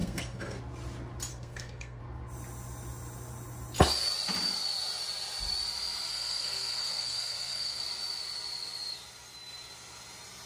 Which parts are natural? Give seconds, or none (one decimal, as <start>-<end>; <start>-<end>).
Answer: 0.6-1.3; 2.0-6.1; 7.8-10.5